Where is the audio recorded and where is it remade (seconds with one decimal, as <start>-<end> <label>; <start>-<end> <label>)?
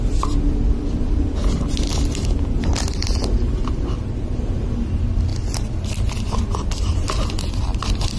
0.0-1.9 remade; 1.9-4.0 recorded; 4.0-5.3 remade; 5.3-6.3 recorded; 6.3-8.2 remade